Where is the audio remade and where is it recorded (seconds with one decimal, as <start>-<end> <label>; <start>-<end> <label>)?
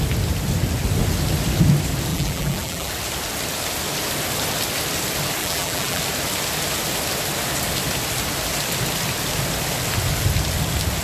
0.0-2.1 recorded; 2.1-2.9 remade; 2.9-5.4 recorded; 5.4-6.0 remade; 6.0-11.0 recorded